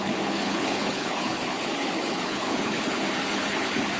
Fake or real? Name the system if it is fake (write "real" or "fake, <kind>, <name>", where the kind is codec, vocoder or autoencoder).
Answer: fake, codec, HILCodec